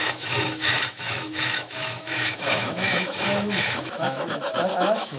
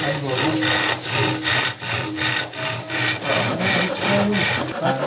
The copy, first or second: first